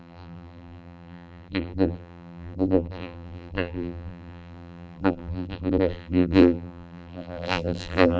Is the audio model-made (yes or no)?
yes